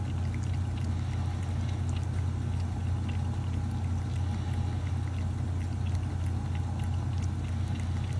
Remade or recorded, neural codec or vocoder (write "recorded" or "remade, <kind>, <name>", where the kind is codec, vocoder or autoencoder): recorded